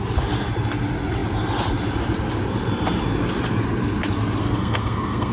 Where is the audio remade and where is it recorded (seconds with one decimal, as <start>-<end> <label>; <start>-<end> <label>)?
0.0-4.4 recorded; 4.4-5.3 remade